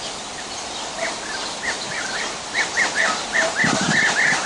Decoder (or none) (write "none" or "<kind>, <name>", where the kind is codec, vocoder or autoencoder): none